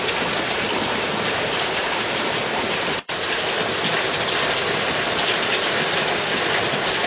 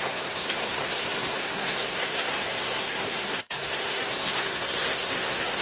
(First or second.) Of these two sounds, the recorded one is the first